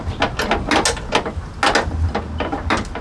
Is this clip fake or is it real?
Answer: real